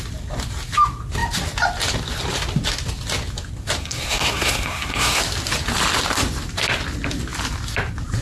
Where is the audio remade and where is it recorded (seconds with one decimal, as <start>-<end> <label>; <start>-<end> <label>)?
0.0-3.8 recorded; 3.8-5.2 remade; 5.2-8.2 recorded